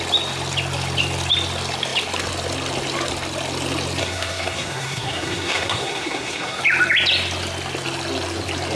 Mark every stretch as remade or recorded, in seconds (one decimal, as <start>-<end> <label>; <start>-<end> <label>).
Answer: 0.0-4.0 recorded; 4.0-6.6 remade; 6.6-8.8 recorded